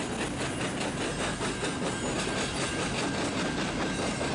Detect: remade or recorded recorded